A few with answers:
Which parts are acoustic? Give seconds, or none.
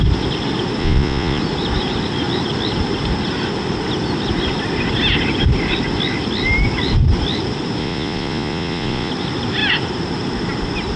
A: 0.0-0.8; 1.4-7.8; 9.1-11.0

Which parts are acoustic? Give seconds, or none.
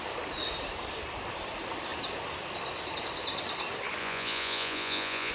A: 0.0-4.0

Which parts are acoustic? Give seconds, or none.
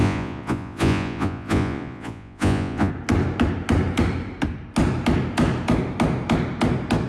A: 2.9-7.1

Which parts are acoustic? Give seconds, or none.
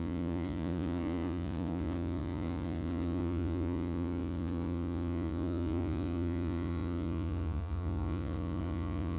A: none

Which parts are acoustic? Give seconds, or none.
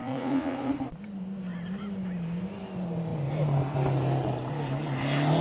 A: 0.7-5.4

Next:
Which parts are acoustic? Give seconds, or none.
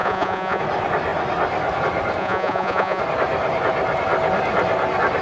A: 0.6-2.2; 3.0-5.2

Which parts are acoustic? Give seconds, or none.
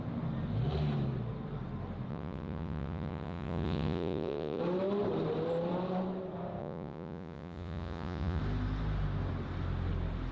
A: 0.0-2.1; 4.6-6.6; 8.4-10.3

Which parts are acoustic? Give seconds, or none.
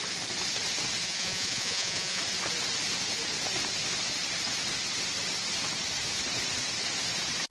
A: 0.0-1.0; 2.2-7.5